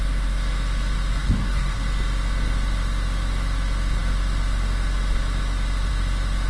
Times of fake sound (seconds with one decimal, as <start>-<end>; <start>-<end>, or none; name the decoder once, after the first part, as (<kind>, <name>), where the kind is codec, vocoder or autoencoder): 1.1-1.8 (codec, SNAC)